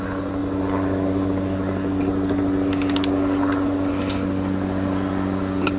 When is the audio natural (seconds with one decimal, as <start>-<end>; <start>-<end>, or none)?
0.0-5.8